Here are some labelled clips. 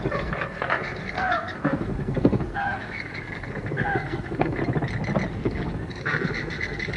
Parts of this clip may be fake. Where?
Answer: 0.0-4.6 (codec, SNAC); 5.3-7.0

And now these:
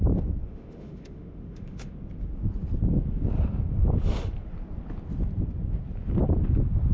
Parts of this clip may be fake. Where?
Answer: 0.4-1.9 (autoencoder, DAC-VAE)

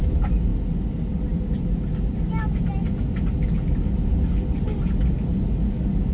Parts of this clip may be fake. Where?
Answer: none

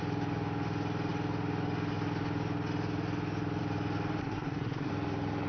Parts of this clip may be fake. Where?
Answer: 4.2-4.9 (codec, SNAC)